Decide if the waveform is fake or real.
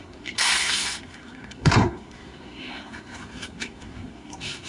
fake